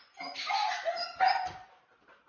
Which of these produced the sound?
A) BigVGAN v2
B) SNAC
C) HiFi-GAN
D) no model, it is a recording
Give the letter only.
D